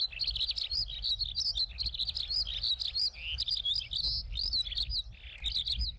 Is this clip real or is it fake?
real